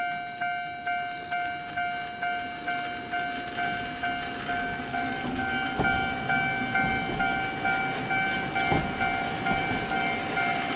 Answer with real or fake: real